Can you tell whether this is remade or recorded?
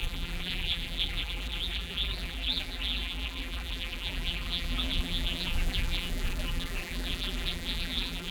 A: remade